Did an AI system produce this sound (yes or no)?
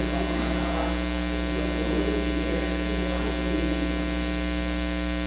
yes